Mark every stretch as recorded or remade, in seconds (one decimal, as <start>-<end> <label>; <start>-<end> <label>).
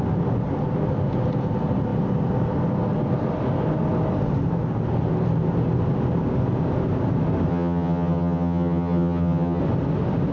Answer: 0.0-7.5 recorded; 7.5-9.6 remade; 9.6-10.3 recorded